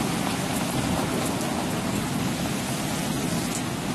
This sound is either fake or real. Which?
real